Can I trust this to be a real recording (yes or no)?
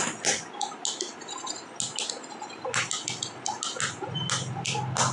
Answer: yes